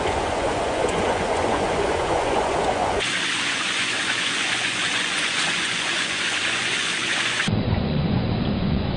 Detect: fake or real fake